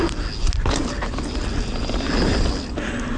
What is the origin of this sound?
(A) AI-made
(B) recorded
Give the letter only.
B